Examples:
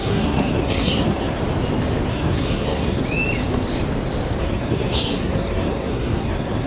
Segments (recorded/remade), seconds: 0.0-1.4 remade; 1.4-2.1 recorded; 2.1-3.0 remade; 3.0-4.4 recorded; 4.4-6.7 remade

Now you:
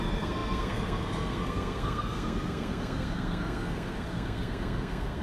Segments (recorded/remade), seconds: 0.0-5.2 remade